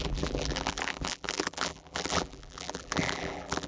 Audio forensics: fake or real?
fake